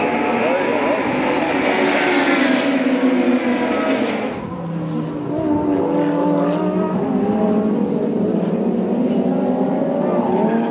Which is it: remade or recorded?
recorded